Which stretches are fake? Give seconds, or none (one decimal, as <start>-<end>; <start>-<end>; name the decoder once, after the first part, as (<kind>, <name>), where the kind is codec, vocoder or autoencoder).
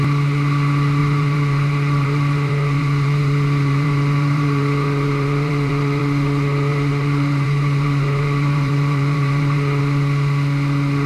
1.0-6.0 (vocoder, BigVGAN v2); 6.7-9.8